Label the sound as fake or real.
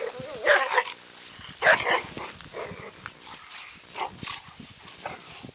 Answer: real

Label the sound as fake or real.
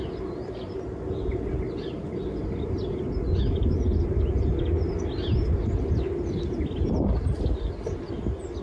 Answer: real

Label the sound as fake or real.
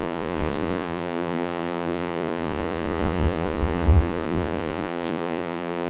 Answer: fake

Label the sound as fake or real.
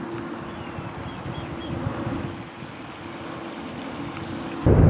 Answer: real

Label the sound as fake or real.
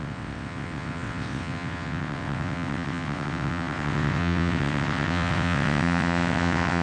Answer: fake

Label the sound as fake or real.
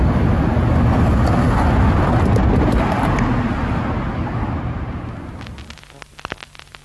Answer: real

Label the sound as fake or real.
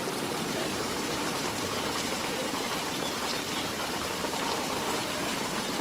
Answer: fake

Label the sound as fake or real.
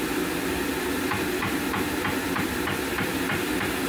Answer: fake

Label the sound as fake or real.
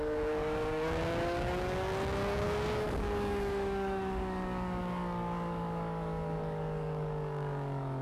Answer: fake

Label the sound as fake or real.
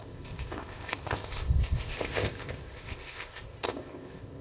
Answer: fake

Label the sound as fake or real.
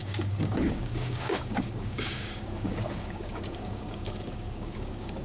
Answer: fake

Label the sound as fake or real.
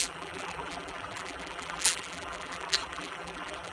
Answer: fake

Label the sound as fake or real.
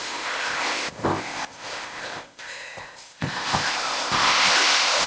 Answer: fake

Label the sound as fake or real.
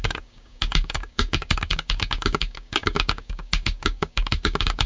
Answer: fake